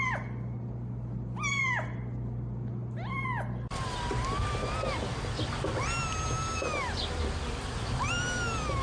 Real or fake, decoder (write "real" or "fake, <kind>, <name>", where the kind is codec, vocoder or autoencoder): real